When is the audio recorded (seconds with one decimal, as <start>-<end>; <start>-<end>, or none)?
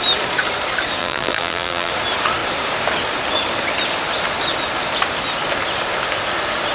0.0-1.0; 1.9-6.7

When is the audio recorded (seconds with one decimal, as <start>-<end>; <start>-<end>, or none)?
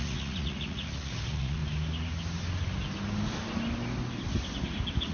1.6-5.1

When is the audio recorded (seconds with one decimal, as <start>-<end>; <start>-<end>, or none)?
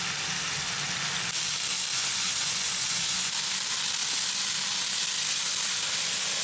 0.0-1.9; 3.3-6.4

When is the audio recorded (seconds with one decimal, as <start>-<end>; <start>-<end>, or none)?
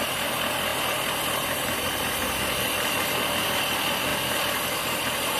0.0-5.4